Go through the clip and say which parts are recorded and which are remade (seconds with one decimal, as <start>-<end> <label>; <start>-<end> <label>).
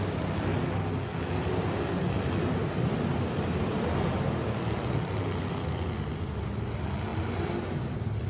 0.0-8.3 recorded